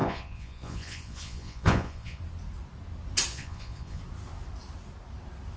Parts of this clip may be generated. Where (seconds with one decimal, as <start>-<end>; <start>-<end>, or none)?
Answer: 0.0-2.2; 3.3-4.0